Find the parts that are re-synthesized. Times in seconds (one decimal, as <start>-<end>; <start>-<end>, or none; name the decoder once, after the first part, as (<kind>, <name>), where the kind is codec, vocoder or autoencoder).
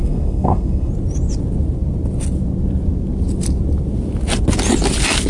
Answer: 0.0-0.9 (codec, SNAC)